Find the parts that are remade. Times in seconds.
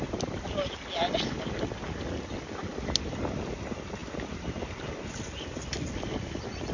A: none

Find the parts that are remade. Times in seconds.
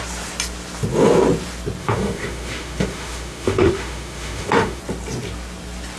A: 1.8-4.8 (autoencoder, DAC-VAE)